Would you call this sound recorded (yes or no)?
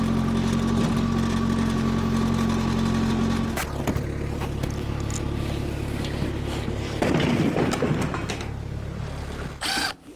yes